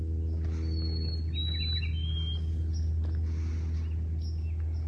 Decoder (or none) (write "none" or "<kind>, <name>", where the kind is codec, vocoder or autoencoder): none